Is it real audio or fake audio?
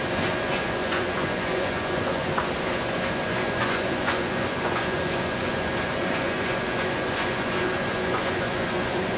fake